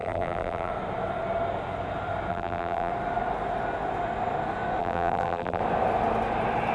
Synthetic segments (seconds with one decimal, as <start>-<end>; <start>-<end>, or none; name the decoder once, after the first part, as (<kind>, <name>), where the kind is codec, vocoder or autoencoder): 0.0-0.7 (vocoder, BigVGAN v2); 2.3-2.9; 4.8-5.6